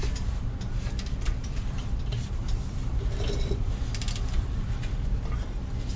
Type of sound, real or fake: real